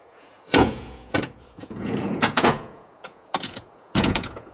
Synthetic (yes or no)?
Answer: yes